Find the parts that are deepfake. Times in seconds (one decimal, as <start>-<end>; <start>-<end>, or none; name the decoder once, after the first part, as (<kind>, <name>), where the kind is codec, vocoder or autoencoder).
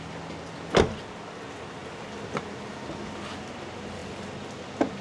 none